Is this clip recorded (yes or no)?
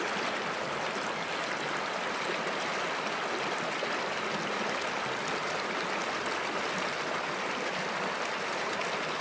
yes